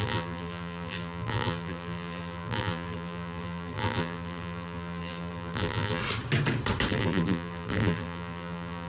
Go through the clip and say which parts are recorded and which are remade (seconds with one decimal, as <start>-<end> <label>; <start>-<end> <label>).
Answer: 0.0-6.0 remade; 6.0-6.9 recorded; 6.9-8.9 remade

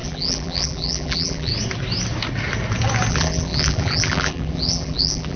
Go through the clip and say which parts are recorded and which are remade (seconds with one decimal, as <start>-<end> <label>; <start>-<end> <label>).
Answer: 0.0-1.5 remade; 1.5-3.1 recorded; 3.1-5.4 remade